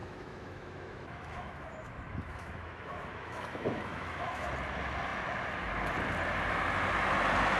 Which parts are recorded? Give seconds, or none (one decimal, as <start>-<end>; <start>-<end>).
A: 4.5-7.6